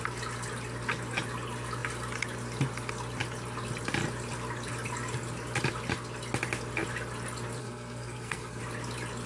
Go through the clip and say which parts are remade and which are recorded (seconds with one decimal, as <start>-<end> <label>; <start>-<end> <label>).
0.0-7.6 recorded; 7.6-8.6 remade; 8.6-9.3 recorded